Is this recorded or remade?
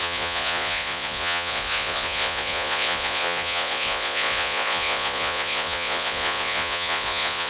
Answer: remade